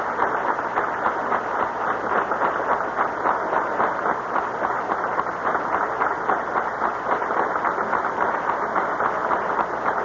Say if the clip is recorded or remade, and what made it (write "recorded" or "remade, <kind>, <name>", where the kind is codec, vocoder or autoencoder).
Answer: recorded